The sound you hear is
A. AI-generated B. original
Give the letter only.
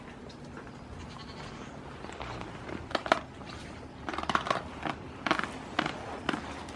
B